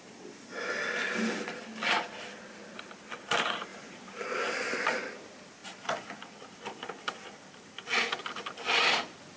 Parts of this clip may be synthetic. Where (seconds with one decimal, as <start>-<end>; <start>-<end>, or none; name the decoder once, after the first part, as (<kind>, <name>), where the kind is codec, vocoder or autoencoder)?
3.7-4.4 (vocoder, BigVGAN v2)